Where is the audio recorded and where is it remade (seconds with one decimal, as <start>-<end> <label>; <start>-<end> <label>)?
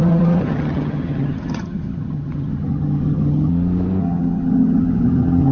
0.0-3.5 remade; 3.5-4.0 recorded; 4.0-5.5 remade